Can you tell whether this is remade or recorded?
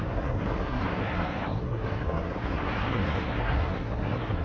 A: remade